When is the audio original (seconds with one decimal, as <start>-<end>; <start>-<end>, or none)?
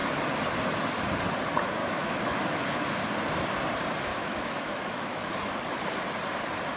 0.0-1.8; 2.9-4.1; 5.3-6.8